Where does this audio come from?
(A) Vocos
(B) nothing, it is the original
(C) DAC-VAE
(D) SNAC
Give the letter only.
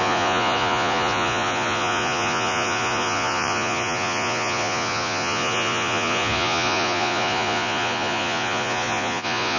A